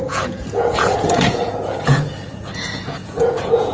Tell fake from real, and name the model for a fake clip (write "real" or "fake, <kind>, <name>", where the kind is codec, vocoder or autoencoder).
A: fake, vocoder, Vocos